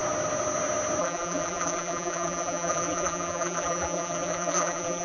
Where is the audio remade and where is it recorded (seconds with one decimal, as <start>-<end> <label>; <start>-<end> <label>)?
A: 0.0-1.0 recorded; 1.0-5.0 remade